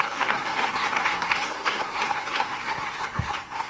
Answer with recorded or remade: remade